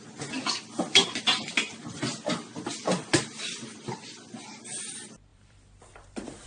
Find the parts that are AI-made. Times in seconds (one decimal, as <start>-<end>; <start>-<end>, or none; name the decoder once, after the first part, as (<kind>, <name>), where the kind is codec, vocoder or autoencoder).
2.9-4.6 (vocoder, BigVGAN v2); 5.3-6.5